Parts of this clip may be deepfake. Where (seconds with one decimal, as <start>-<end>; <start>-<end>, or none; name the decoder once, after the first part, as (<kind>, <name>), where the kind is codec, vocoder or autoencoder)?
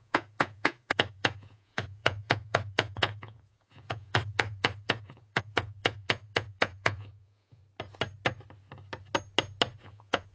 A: 0.0-7.6 (vocoder, Vocos); 9.8-10.3